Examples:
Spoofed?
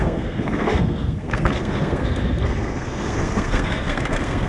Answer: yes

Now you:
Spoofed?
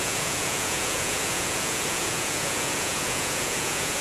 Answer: yes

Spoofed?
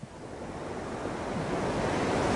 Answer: no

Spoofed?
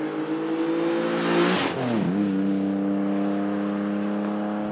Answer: no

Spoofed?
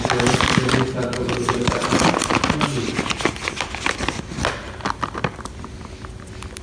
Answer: no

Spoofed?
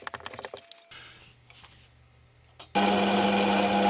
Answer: no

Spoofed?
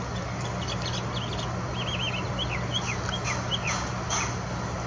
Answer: no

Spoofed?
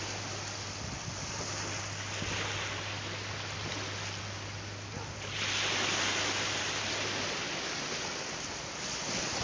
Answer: no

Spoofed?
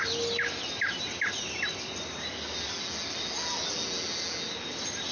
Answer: no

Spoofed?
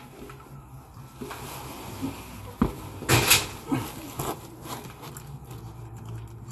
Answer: no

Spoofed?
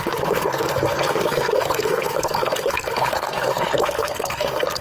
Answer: yes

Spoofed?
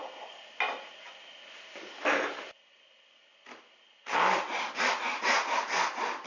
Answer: no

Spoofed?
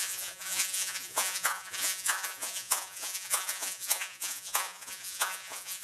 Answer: yes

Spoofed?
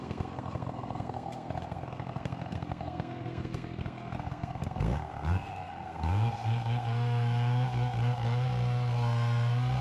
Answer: yes